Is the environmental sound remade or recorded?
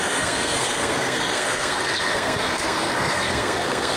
remade